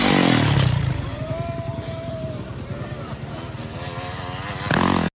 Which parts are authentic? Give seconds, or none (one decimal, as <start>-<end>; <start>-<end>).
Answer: 0.0-1.1; 4.2-5.2